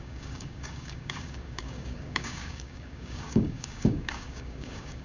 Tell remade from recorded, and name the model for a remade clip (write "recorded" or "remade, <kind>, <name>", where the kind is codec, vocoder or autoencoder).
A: remade, codec, DAC